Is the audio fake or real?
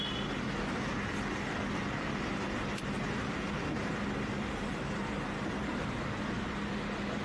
real